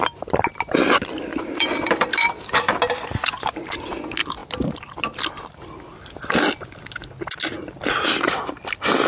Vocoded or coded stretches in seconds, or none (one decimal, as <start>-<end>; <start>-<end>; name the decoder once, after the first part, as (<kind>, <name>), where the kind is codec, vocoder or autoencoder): 1.3-2.8 (vocoder, BigVGAN v2)